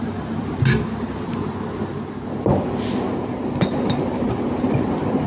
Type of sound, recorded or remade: recorded